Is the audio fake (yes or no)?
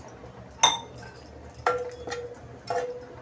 no